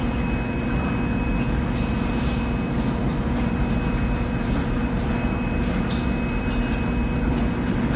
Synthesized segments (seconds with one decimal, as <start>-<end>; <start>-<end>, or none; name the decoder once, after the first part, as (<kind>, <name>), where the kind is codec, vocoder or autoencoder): none

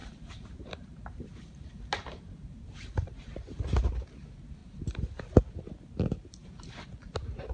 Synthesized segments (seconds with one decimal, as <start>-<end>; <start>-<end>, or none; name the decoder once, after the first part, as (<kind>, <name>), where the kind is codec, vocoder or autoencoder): 0.0-3.6 (vocoder, BigVGAN v2); 4.6-5.2; 6.4-6.9